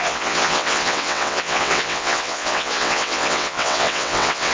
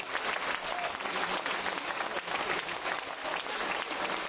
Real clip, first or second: second